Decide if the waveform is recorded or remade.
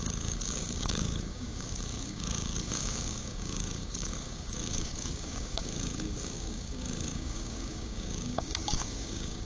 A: remade